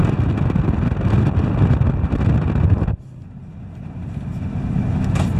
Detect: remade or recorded recorded